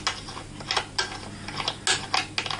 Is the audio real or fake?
real